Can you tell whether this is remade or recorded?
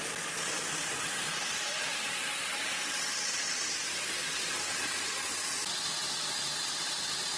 recorded